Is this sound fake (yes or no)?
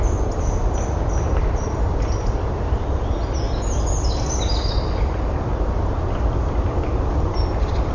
no